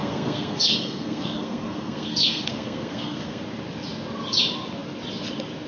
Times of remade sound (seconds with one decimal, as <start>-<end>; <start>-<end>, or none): 0.0-3.4